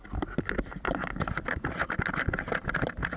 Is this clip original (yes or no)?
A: yes